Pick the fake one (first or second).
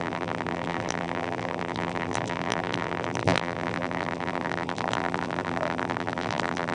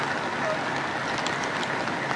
first